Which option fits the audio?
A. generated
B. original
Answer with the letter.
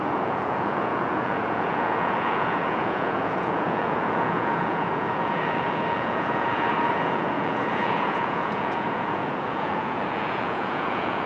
A